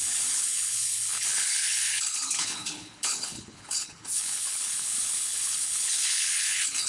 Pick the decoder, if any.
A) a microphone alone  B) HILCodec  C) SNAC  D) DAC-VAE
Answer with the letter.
B